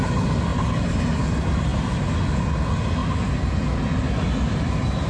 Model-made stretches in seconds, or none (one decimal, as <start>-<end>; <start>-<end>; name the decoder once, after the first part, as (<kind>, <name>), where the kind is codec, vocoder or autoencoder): 0.5-1.2 (vocoder, BigVGAN v2); 3.0-3.6